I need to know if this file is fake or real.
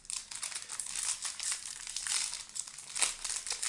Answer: real